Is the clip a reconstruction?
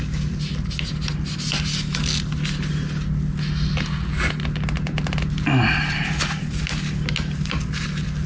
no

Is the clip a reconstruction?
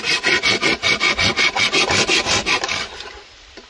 no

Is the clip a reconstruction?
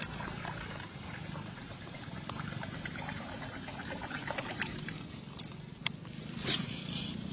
yes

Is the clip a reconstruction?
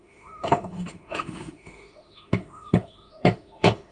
yes